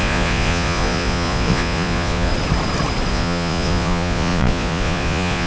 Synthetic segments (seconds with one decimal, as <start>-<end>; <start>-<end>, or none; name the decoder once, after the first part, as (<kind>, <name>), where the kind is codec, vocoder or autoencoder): 0.0-2.3 (vocoder, Vocos); 3.1-5.5